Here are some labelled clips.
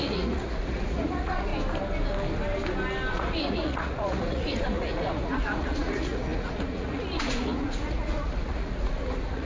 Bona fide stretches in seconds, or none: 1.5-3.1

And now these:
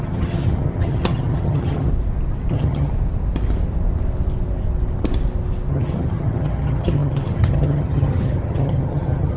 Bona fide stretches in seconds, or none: 1.9-2.5; 2.9-5.7

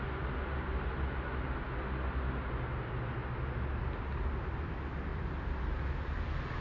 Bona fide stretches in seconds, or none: 0.0-6.6

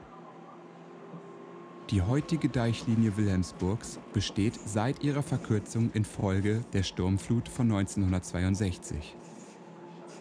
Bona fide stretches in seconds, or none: 0.0-10.2